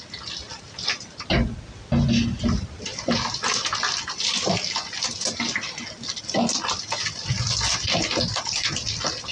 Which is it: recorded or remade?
recorded